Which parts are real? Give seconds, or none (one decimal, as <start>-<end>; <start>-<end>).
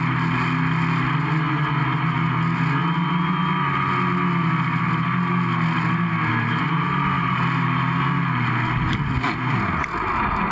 0.0-6.3; 7.8-10.5